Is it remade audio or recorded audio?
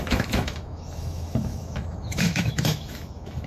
remade